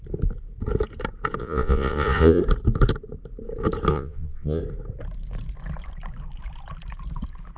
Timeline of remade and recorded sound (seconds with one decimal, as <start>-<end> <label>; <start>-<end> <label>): 0.0-1.4 recorded; 1.4-2.4 remade; 2.4-3.9 recorded; 3.9-4.6 remade; 4.6-7.6 recorded